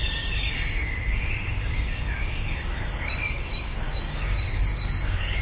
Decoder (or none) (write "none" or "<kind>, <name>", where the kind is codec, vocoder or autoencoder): codec, DAC